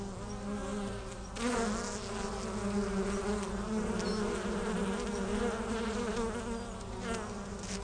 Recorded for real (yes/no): yes